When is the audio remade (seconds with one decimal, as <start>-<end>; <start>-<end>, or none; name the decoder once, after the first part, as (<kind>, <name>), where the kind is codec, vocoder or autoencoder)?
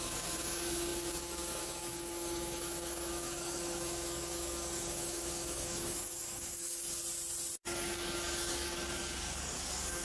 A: 0.0-7.0 (codec, DAC); 7.6-10.0